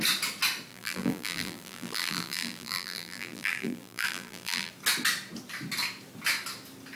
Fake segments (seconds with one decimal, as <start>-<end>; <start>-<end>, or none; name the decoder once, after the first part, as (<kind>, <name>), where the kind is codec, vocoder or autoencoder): 0.7-4.7 (vocoder, BigVGAN v2)